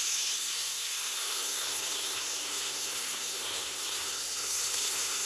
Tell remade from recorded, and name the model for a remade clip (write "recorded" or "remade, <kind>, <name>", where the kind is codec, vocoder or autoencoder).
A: remade, codec, SNAC